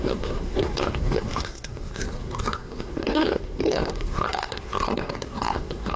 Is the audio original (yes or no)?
no